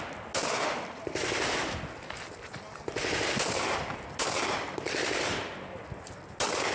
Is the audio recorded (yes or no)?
yes